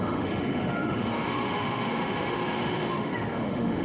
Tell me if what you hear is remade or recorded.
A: remade